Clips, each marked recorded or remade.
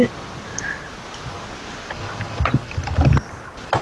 recorded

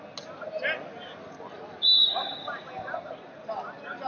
recorded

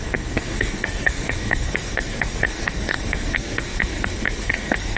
remade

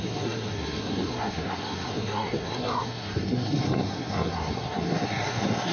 remade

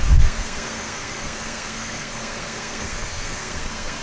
remade